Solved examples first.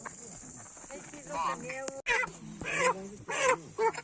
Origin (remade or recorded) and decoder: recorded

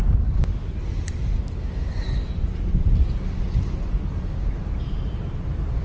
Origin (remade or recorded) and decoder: recorded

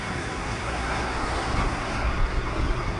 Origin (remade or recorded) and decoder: remade, codec, SNAC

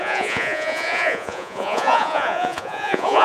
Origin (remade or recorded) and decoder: remade, vocoder, Vocos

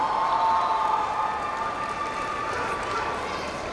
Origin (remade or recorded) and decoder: recorded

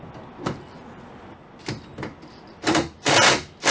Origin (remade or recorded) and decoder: recorded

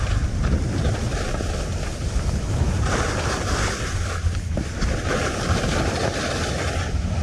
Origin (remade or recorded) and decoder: remade, vocoder, BigVGAN v2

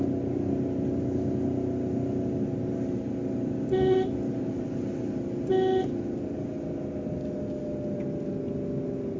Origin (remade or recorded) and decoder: recorded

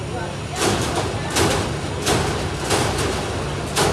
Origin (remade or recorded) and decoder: recorded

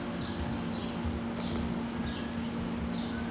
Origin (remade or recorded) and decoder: recorded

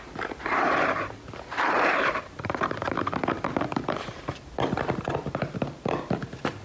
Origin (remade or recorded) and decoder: remade, vocoder, BigVGAN v2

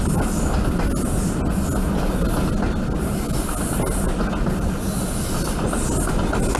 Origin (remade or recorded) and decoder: recorded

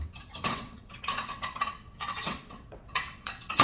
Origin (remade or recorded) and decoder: remade, vocoder, WaveNeXt